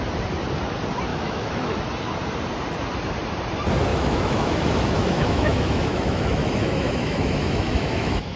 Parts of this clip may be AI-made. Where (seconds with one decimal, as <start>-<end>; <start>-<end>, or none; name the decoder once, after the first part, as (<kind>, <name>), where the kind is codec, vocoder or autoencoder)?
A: 1.1-1.8 (autoencoder, DAC-VAE); 3.9-8.4